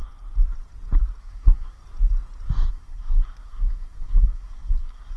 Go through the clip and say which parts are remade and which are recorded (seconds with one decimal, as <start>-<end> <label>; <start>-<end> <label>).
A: 0.0-1.2 recorded; 1.2-1.8 remade; 1.8-2.7 recorded; 2.7-5.2 remade